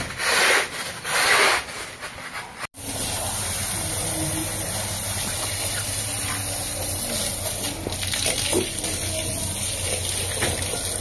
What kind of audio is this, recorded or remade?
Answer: recorded